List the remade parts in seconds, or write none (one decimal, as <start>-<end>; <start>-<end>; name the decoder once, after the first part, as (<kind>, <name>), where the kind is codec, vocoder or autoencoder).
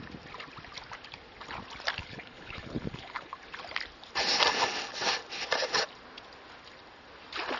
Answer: 2.0-3.4 (codec, HILCodec)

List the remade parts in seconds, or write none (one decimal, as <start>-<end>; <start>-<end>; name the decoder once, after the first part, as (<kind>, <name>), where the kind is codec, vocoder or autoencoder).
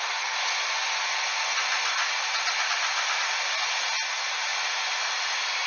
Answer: none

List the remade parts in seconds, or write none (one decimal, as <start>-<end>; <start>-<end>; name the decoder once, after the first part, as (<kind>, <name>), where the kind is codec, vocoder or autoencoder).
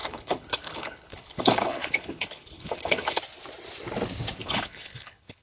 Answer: 0.0-3.2 (codec, HILCodec); 4.4-5.4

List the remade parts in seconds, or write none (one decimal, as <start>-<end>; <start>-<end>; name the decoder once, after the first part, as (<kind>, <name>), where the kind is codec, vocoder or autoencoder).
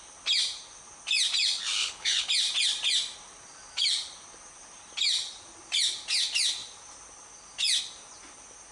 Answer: 1.8-2.3 (codec, HILCodec)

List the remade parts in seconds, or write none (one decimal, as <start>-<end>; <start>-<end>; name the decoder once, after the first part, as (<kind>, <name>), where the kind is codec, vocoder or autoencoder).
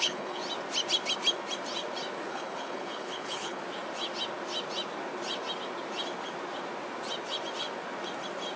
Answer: 0.0-0.4 (codec, HILCodec); 2.3-3.6